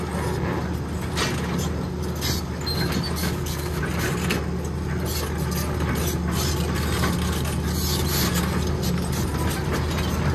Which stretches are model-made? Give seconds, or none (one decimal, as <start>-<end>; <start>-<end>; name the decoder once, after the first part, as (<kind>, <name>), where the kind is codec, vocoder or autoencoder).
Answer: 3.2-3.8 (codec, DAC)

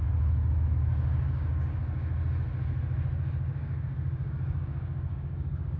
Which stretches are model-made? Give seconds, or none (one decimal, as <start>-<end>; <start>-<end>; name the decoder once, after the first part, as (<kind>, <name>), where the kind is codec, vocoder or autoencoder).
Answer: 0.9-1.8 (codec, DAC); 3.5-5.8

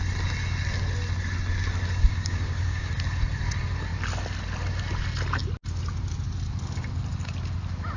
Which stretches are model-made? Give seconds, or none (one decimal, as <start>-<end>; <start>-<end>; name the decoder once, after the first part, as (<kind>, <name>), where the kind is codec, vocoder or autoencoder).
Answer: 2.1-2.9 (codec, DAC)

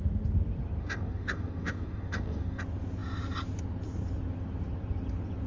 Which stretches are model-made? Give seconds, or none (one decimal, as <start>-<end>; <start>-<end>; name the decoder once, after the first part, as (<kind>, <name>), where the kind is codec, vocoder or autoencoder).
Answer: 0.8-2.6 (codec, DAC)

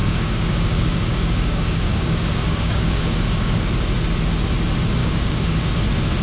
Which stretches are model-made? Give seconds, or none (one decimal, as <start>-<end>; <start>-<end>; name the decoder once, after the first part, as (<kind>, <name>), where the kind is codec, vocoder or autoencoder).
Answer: 0.0-3.7 (codec, DAC); 5.0-5.7

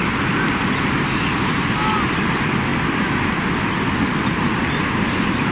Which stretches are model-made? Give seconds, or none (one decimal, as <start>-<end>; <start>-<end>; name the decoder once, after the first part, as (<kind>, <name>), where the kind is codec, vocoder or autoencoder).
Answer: none

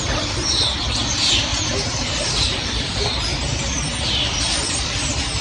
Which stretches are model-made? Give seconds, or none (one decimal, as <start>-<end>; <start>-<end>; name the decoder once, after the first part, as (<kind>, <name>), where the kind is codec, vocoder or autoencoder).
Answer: none

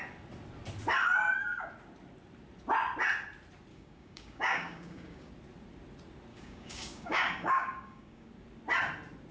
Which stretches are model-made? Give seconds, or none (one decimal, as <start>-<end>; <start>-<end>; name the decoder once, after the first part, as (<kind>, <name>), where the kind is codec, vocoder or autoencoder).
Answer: 3.7-5.3 (codec, DAC); 6.3-8.3